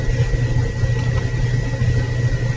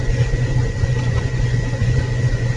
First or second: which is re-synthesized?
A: second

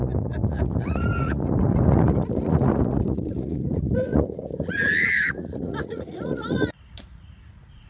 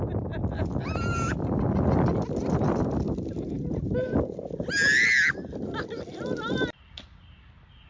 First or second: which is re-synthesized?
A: first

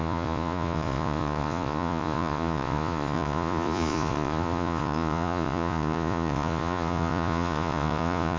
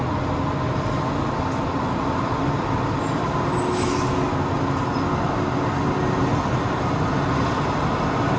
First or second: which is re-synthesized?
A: first